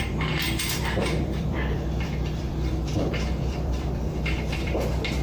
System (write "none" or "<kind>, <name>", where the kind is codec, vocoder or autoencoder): vocoder, BigVGAN v2